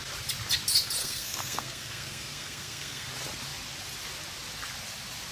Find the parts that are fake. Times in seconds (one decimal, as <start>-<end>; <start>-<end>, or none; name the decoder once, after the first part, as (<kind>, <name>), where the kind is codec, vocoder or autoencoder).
1.0-3.1 (codec, SNAC)